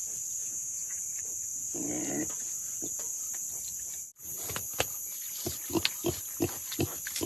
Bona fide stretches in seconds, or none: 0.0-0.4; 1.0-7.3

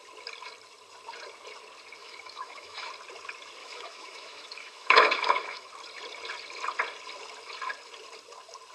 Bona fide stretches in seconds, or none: 0.0-2.0; 2.9-3.6; 5.7-8.7

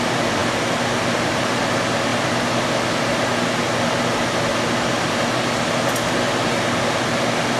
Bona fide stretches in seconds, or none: 0.0-7.6

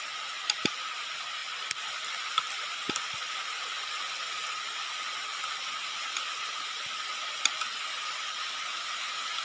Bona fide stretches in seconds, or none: 0.0-9.4

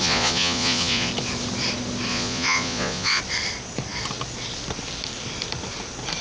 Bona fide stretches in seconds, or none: 1.1-2.1; 3.2-6.2

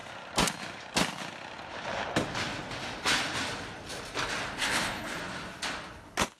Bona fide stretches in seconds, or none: 0.0-4.6; 5.2-6.4

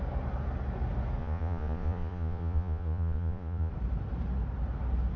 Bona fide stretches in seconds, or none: 0.0-1.2; 3.7-5.2